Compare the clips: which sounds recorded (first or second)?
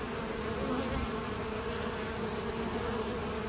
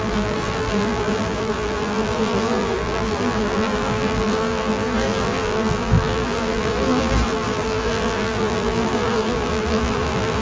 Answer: first